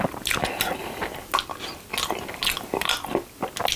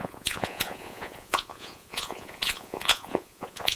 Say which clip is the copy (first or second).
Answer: second